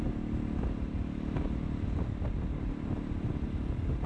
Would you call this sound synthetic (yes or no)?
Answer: no